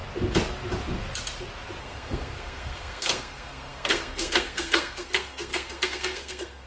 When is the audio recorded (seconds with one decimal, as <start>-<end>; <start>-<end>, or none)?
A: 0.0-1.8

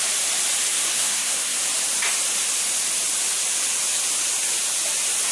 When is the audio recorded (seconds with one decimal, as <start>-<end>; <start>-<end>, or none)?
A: 0.0-0.7; 1.6-5.3

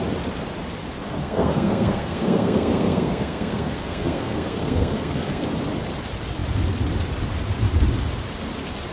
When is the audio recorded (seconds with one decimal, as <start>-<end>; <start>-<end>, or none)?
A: 0.0-1.2; 5.4-8.9

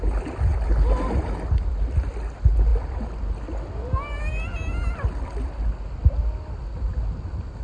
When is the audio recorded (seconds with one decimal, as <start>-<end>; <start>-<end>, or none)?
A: 0.0-7.6